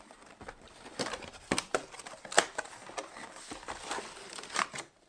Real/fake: fake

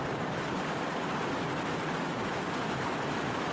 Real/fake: real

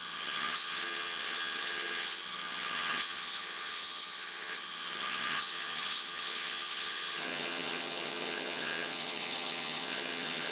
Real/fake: fake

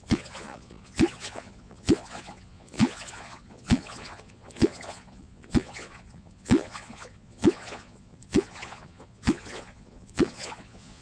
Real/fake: fake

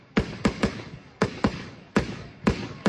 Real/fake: fake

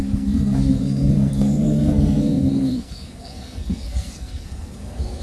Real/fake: fake